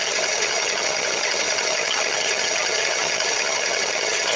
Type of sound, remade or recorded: remade